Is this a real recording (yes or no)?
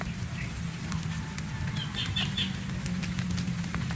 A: yes